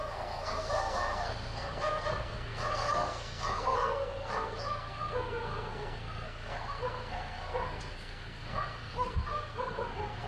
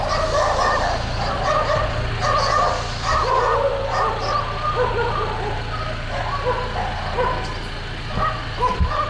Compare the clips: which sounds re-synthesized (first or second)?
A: first